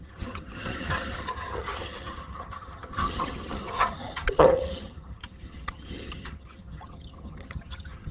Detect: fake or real fake